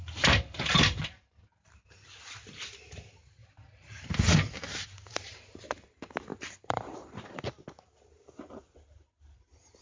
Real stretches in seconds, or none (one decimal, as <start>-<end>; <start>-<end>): 1.0-6.3; 8.1-9.8